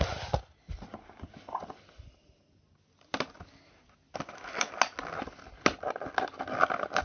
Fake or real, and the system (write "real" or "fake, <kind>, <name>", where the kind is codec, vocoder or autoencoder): real